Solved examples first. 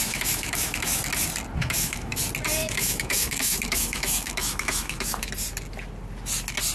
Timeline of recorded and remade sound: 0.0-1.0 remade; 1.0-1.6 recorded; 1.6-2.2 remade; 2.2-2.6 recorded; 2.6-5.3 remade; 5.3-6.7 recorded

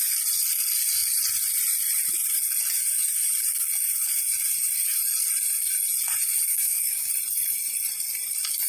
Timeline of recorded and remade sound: 0.0-6.5 recorded; 6.5-7.1 remade; 7.1-8.7 recorded

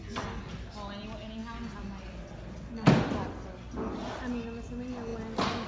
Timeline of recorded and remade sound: 0.0-5.7 recorded

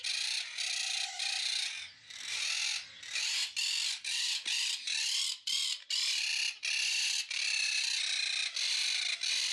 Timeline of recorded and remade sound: 0.0-9.5 recorded

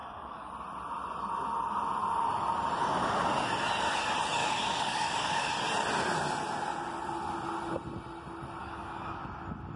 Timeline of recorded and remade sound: 0.0-0.5 remade; 0.5-4.4 recorded; 4.4-5.5 remade; 5.5-8.6 recorded; 8.6-9.2 remade; 9.2-9.8 recorded

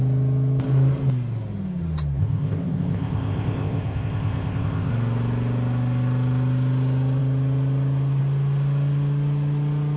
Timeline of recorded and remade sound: 0.0-2.2 recorded; 2.2-4.9 remade; 4.9-10.0 recorded

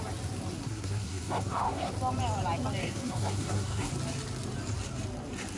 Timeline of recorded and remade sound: 0.0-0.6 recorded; 0.6-1.9 remade; 1.9-2.8 recorded; 2.8-3.9 remade; 3.9-5.6 recorded

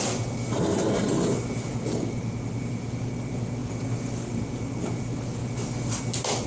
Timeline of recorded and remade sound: 0.0-1.7 recorded; 1.7-2.2 remade; 2.2-6.5 recorded